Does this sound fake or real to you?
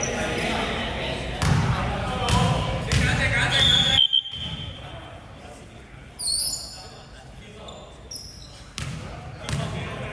real